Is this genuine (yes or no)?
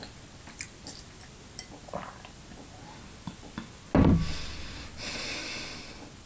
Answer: yes